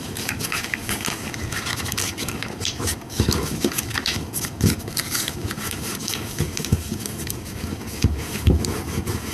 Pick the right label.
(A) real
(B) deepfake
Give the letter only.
B